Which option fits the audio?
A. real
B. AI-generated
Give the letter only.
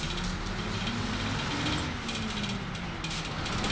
A